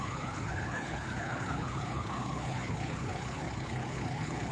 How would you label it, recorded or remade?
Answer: remade